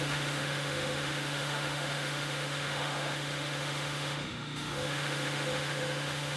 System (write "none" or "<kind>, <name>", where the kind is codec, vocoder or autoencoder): autoencoder, DAC-VAE